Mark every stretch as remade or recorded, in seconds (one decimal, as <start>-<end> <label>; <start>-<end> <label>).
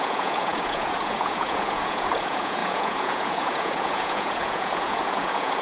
0.0-5.6 remade